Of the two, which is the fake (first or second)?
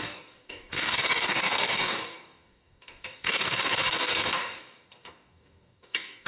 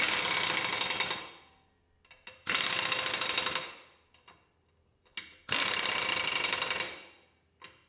first